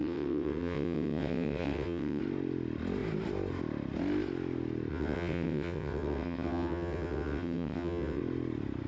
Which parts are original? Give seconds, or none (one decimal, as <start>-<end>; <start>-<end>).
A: 2.2-4.9; 8.2-8.9